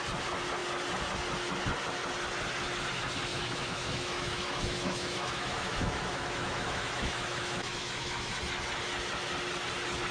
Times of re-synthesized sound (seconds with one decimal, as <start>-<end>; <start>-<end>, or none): 3.3-8.4